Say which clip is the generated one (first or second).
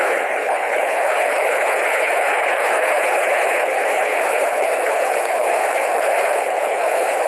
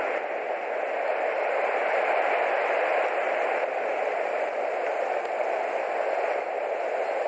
first